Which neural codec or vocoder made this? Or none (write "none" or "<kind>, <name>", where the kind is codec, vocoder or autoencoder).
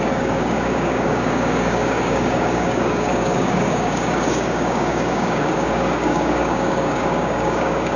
codec, DAC